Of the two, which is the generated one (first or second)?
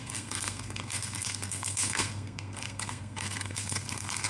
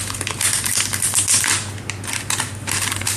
first